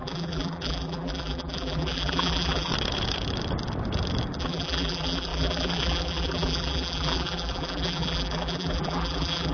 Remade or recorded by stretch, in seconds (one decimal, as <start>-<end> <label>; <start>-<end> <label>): 0.0-2.7 remade; 2.7-4.4 recorded; 4.4-9.5 remade